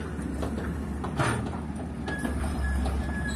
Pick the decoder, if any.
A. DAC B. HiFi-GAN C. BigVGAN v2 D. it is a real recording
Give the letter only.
C